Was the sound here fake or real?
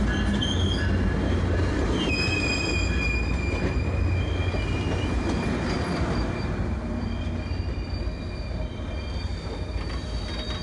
real